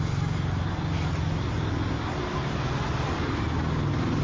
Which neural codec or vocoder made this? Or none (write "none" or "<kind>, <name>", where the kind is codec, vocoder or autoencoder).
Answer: none